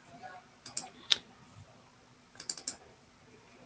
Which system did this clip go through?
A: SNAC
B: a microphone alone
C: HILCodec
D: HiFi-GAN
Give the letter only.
B